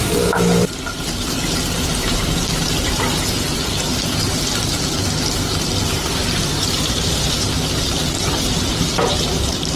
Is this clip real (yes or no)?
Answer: no